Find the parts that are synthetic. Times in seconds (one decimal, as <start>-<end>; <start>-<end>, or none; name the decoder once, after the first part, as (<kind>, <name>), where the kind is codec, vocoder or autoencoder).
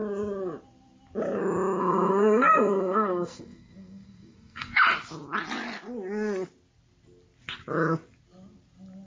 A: 1.8-4.8 (codec, SNAC)